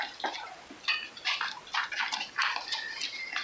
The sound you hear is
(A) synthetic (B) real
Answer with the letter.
B